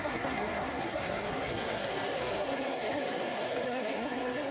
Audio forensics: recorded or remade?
remade